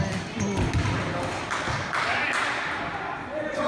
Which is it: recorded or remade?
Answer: recorded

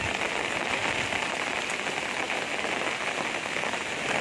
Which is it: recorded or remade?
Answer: recorded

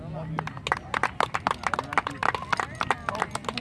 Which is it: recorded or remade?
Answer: recorded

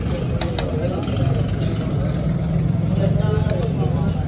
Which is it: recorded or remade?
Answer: recorded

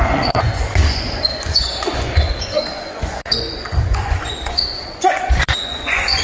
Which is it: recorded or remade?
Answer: remade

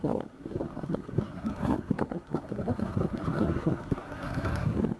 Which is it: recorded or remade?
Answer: remade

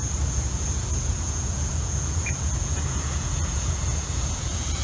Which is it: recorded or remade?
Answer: remade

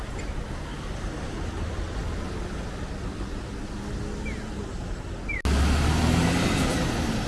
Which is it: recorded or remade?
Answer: recorded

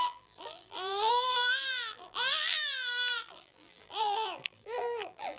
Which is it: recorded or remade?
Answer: remade